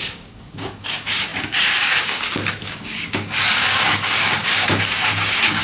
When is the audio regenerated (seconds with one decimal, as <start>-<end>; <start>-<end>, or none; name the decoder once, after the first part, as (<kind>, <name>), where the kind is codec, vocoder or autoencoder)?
0.0-5.6 (codec, DAC)